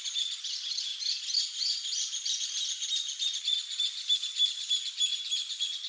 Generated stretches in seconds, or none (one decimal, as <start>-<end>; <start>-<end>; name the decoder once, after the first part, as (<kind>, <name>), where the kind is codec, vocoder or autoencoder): none